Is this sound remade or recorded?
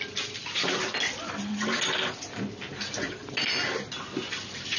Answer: recorded